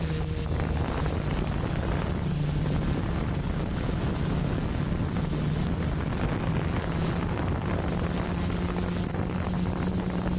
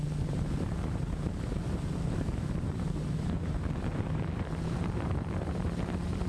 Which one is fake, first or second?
second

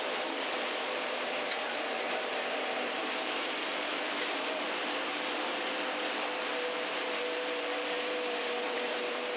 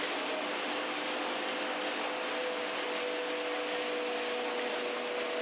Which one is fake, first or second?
first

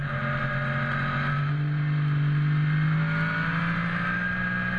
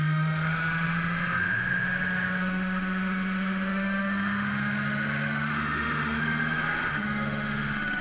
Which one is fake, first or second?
second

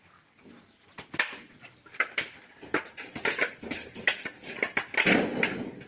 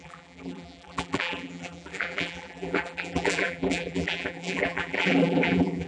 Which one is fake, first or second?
second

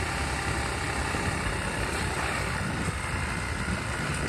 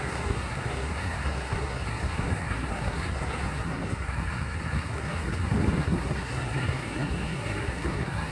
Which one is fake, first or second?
second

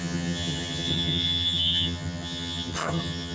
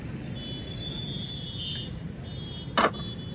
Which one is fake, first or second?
first